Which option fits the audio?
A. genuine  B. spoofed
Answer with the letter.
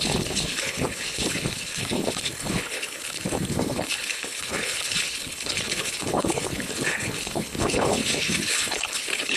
B